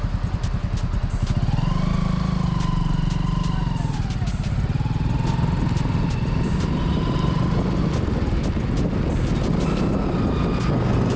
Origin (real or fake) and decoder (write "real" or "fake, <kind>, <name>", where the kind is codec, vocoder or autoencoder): real